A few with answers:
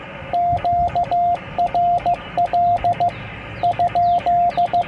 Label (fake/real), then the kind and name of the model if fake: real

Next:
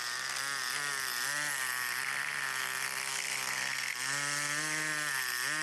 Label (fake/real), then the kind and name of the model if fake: real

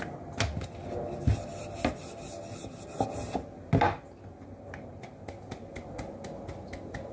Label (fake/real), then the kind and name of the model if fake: real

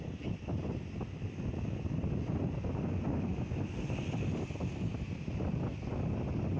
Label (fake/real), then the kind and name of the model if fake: real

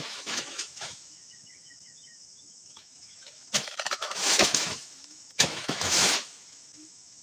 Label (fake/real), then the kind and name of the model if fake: fake, autoencoder, DAC-VAE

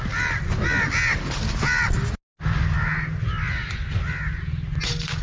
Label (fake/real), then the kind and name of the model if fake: real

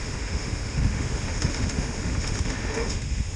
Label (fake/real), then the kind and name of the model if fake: fake, autoencoder, DAC-VAE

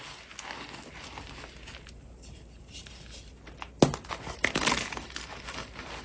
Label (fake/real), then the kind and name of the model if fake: real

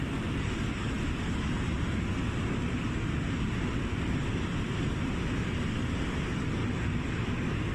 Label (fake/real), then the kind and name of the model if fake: real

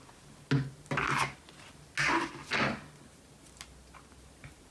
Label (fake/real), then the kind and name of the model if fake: real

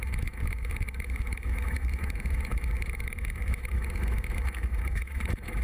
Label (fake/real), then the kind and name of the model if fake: fake, autoencoder, DAC-VAE